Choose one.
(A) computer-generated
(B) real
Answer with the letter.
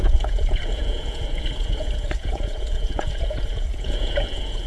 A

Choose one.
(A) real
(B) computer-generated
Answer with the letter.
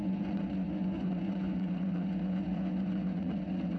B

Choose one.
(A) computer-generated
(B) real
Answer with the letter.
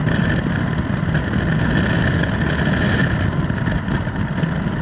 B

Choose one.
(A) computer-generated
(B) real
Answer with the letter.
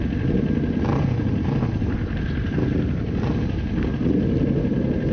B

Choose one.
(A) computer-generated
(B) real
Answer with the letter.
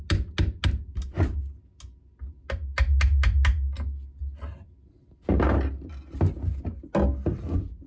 B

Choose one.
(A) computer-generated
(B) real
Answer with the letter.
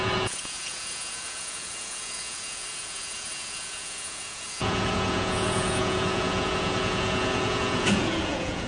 A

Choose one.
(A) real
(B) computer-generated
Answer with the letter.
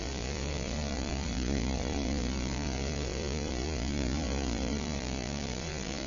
B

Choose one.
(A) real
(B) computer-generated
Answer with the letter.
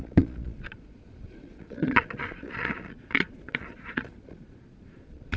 B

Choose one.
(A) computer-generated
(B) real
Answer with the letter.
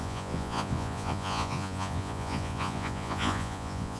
A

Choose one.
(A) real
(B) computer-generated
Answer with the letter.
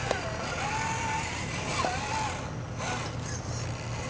A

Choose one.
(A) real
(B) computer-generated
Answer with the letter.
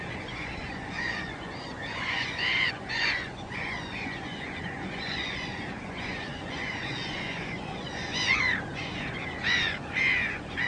B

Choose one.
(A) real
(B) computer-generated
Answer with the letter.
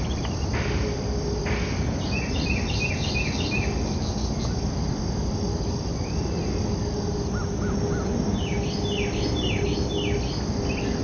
A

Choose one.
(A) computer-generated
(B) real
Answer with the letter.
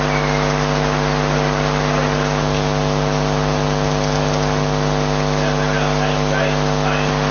B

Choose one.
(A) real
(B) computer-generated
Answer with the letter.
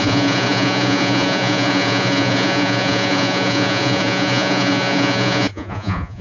B